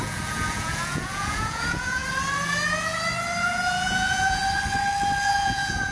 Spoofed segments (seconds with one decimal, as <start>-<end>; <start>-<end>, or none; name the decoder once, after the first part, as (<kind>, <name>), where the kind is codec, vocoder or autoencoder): 0.0-2.0 (vocoder, Vocos); 3.4-4.4; 5.2-5.9